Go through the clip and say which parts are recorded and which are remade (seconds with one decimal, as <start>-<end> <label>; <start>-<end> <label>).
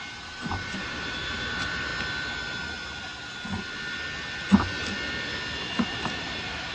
0.0-1.9 remade; 1.9-5.9 recorded; 5.9-6.7 remade